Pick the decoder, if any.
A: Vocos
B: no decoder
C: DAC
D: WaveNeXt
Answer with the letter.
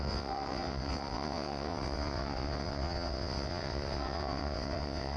D